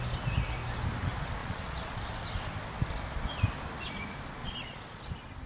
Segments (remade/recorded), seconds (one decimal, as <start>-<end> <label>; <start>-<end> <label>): 0.0-1.4 recorded; 1.4-2.0 remade; 2.0-4.4 recorded; 4.4-5.0 remade; 5.0-5.5 recorded